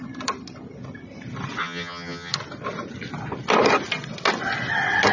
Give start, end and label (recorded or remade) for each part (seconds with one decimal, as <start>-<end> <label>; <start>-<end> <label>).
0.0-1.6 recorded; 1.6-2.3 remade; 2.3-5.1 recorded